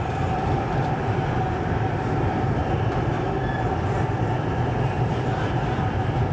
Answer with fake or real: fake